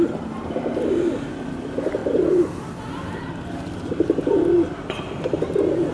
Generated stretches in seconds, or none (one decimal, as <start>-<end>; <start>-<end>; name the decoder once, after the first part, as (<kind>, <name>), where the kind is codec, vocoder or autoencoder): none